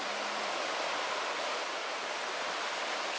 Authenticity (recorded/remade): recorded